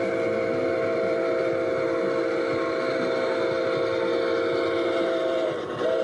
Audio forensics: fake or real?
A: real